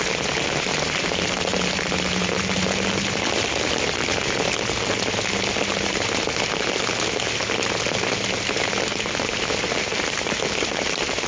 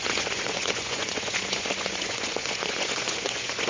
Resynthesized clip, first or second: second